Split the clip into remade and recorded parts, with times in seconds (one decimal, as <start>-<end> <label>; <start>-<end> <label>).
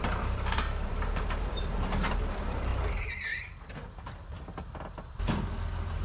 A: 0.0-2.7 remade; 2.7-5.1 recorded; 5.1-6.0 remade